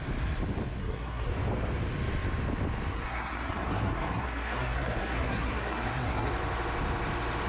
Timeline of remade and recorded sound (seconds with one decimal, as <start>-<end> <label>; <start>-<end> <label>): 0.0-0.8 recorded; 0.8-1.3 remade; 1.3-2.9 recorded; 2.9-6.3 remade; 6.3-7.5 recorded